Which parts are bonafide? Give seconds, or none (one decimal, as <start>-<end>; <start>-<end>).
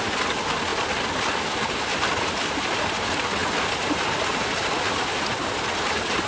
0.0-6.3